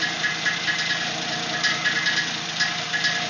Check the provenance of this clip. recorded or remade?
recorded